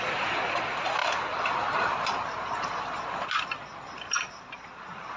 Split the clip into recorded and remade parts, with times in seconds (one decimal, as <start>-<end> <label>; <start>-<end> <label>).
0.0-5.2 recorded